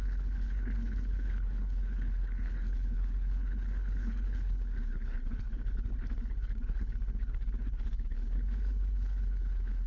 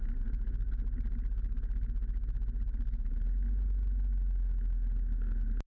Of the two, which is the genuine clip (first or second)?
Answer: second